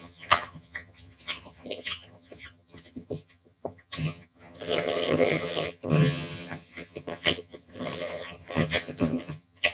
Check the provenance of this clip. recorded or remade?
remade